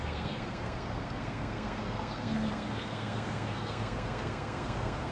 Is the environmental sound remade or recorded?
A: remade